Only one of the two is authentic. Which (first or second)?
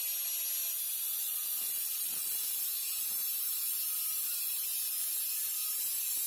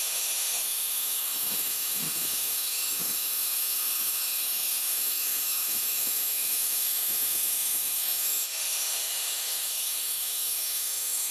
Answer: first